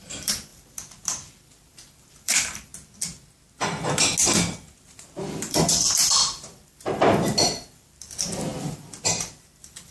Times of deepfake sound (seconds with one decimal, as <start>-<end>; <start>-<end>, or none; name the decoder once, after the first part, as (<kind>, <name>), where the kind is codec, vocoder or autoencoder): 0.0-2.7 (vocoder, BigVGAN v2); 5.3-9.9